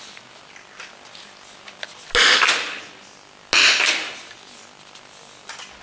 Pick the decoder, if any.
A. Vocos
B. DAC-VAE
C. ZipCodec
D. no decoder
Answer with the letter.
D